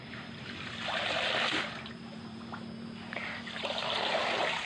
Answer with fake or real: real